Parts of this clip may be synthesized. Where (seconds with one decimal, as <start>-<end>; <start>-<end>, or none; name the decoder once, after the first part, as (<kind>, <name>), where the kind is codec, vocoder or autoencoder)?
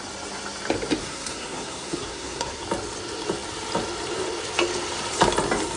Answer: 1.0-2.6 (codec, SNAC)